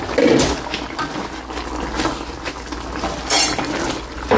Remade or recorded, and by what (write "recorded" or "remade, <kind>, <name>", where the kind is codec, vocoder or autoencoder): recorded